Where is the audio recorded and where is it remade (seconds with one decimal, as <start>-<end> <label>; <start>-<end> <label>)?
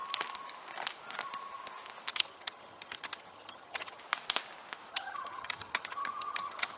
0.0-2.1 recorded; 2.1-4.0 remade; 4.0-4.9 recorded; 4.9-6.8 remade